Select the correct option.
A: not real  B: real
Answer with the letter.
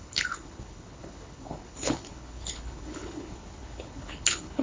A